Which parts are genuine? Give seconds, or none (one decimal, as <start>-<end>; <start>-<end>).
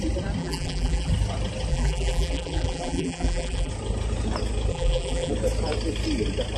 0.0-0.4; 1.1-1.7; 3.7-4.7; 5.3-6.6